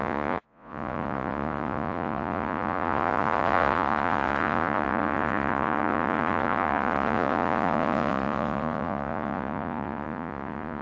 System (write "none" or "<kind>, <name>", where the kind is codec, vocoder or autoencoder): vocoder, Vocos